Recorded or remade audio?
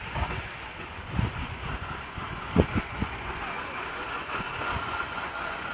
remade